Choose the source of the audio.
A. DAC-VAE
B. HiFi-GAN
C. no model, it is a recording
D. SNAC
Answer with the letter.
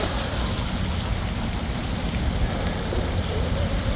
C